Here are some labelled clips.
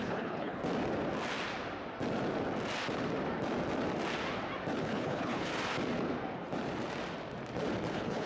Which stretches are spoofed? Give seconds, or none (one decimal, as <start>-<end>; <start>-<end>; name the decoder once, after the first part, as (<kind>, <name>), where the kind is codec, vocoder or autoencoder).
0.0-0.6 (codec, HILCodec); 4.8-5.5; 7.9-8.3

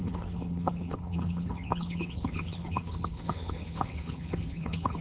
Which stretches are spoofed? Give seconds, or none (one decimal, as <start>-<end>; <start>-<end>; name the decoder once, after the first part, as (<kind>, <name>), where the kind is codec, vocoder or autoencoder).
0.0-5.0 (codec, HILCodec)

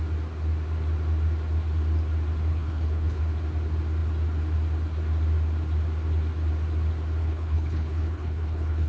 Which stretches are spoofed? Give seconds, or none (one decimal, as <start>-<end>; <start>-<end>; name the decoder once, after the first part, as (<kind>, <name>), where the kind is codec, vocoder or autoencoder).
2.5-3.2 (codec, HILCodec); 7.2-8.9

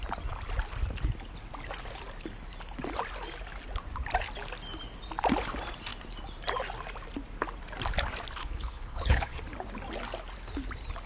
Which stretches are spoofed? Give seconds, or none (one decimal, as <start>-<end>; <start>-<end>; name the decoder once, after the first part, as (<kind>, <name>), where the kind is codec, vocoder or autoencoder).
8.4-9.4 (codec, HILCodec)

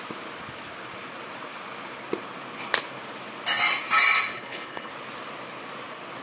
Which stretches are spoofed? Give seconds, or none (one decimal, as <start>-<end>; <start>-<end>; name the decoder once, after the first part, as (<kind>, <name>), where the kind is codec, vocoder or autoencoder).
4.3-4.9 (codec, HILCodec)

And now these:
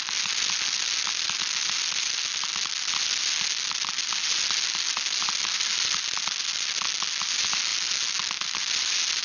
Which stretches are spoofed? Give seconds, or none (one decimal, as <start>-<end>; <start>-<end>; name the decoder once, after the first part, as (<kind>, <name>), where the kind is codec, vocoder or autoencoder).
none

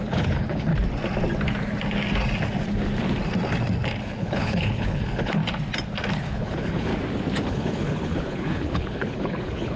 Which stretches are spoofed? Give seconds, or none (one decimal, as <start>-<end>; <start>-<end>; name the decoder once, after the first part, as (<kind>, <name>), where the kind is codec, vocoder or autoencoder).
0.0-0.7 (codec, HILCodec); 4.0-5.4; 6.1-6.9; 7.4-9.8